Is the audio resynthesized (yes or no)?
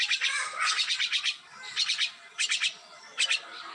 no